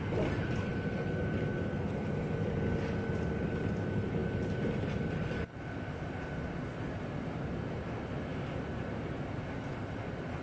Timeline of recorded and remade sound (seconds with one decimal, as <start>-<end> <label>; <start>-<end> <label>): 0.0-10.4 recorded